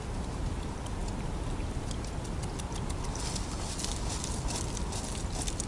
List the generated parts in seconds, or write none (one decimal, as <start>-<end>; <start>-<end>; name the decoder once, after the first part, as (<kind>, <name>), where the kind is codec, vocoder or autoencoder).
none